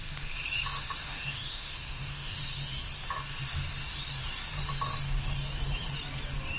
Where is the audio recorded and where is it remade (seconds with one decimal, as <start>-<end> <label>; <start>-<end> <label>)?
0.0-1.0 recorded; 1.0-2.5 remade; 2.5-6.6 recorded